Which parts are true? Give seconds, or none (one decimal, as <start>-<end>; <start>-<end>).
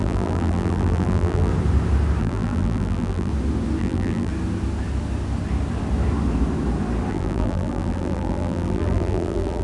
1.5-2.2; 3.3-3.8; 4.3-7.1